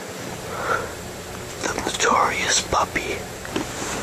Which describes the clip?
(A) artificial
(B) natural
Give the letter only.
B